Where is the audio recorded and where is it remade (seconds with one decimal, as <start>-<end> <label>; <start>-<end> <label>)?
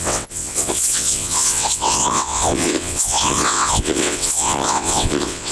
0.0-5.5 remade